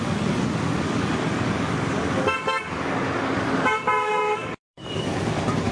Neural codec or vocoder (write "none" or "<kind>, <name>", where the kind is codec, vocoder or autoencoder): codec, DAC